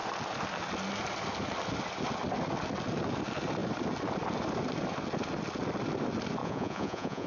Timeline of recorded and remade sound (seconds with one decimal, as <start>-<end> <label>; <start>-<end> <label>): 0.0-6.4 recorded; 6.4-7.3 remade